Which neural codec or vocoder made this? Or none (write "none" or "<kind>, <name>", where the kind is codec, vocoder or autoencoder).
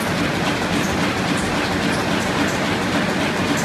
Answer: none